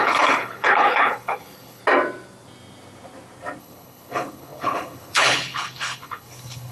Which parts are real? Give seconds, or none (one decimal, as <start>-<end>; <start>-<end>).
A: 1.8-3.6